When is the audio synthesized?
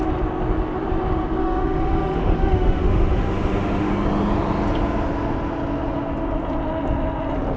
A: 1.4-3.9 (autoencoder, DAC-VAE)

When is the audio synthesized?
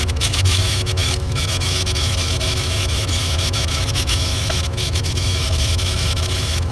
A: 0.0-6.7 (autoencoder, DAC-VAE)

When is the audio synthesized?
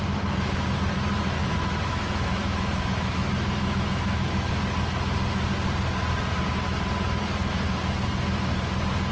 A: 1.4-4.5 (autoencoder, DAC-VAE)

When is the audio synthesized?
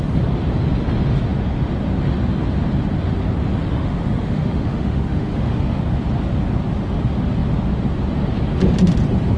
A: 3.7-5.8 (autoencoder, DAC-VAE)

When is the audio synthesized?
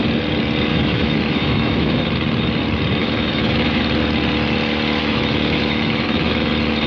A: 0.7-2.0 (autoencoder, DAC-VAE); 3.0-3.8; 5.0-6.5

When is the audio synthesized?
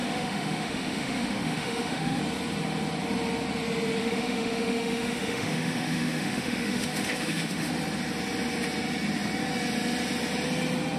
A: 0.0-2.2 (autoencoder, DAC-VAE); 4.0-7.7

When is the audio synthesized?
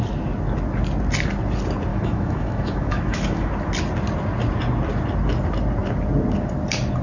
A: 1.9-3.5 (autoencoder, DAC-VAE)